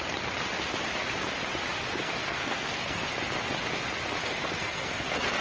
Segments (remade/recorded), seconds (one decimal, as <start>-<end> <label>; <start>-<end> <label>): 0.0-1.8 recorded; 1.8-3.1 remade; 3.1-4.2 recorded; 4.2-5.4 remade